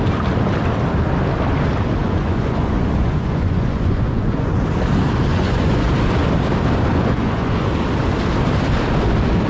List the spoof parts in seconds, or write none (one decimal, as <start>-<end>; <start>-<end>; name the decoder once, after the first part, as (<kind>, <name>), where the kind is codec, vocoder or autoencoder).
2.0-4.6 (vocoder, Vocos); 5.3-5.9; 6.9-7.7

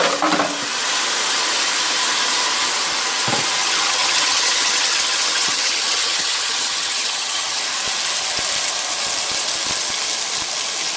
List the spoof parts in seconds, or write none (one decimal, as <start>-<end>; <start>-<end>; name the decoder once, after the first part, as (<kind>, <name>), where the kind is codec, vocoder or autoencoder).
3.6-7.6 (vocoder, HiFi-GAN)

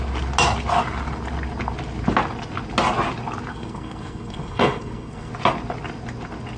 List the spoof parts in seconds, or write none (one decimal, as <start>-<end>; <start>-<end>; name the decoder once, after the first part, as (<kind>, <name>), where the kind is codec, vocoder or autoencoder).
3.5-5.3 (codec, SNAC)

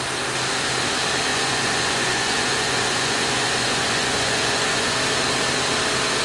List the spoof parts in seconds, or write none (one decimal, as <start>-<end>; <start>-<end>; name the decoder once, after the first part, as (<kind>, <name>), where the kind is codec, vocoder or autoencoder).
1.3-5.0 (vocoder, Vocos)

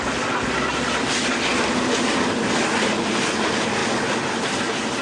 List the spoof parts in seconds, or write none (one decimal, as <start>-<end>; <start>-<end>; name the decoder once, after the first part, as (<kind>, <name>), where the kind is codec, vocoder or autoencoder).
none

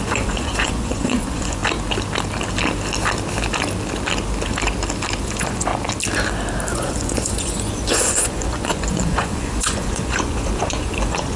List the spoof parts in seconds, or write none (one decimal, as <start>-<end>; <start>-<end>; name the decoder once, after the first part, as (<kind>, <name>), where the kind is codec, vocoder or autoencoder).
0.0-1.6 (vocoder, Vocos); 5.2-5.7; 6.7-11.4